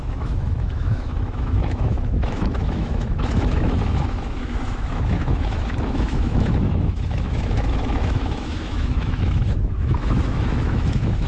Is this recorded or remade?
remade